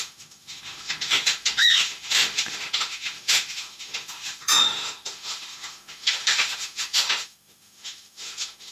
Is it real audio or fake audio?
fake